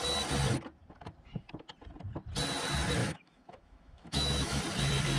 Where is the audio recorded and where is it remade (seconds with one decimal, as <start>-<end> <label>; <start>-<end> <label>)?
0.0-3.0 recorded; 3.0-4.6 remade; 4.6-5.2 recorded